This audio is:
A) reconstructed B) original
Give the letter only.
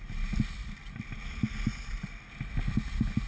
B